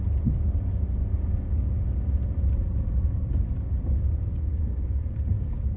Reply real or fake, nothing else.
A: real